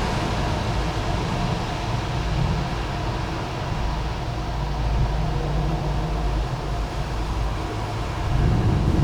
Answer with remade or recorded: recorded